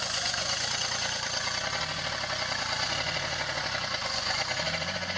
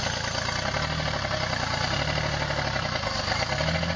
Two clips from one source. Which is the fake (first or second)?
first